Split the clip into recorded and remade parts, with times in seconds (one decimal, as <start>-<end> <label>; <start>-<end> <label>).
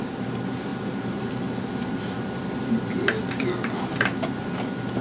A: 0.0-5.0 recorded